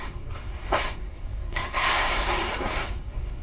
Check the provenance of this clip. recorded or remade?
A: remade